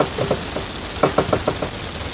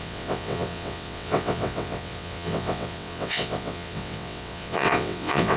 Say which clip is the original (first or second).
first